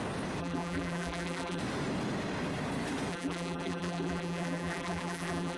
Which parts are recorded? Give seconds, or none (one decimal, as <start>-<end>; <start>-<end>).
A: 0.0-0.4; 1.6-3.1